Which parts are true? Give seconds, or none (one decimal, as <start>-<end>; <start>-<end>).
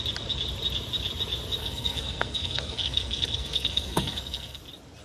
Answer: 0.0-1.6; 4.6-5.0